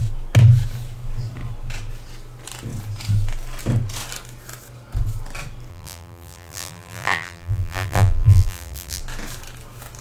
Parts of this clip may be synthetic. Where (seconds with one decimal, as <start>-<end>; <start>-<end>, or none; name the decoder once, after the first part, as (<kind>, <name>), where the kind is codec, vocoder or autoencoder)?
5.7-9.0 (vocoder, BigVGAN v2)